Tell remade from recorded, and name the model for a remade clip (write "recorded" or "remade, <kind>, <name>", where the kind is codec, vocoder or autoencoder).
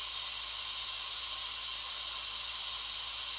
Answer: recorded